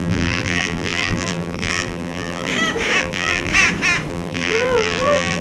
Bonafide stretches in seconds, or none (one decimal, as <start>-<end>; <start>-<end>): 2.5-3.0; 3.5-4.1